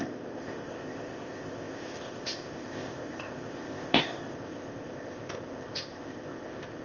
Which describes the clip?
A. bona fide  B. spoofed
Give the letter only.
B